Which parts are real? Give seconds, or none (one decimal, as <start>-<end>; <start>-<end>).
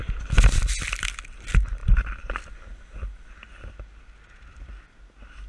0.0-5.5